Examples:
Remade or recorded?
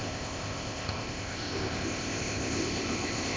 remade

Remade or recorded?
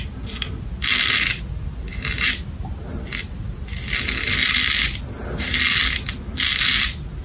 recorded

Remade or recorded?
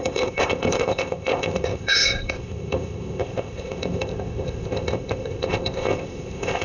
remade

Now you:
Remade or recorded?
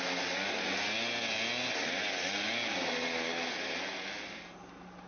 recorded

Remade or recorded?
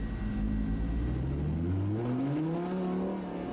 recorded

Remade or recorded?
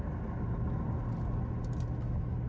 recorded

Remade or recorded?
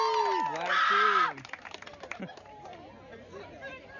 recorded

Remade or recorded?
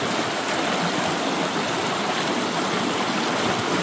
recorded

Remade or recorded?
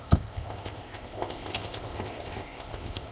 remade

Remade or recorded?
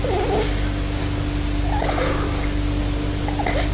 recorded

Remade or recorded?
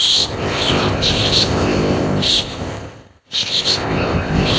remade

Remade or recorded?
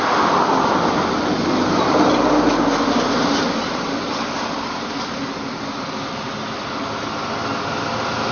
recorded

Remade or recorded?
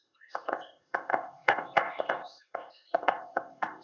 remade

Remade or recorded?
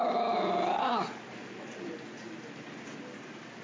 recorded